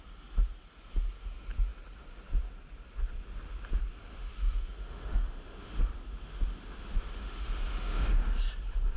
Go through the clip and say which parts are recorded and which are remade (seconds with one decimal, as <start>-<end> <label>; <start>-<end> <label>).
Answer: 0.0-4.1 recorded; 4.1-8.4 remade; 8.4-9.0 recorded